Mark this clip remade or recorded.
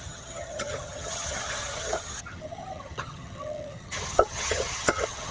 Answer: remade